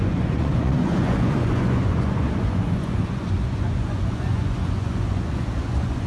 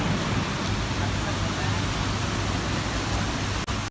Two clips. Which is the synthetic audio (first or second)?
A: first